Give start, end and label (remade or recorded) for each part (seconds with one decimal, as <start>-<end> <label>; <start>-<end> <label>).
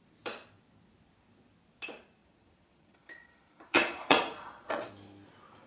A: 0.0-2.2 recorded; 2.2-4.9 remade; 4.9-5.7 recorded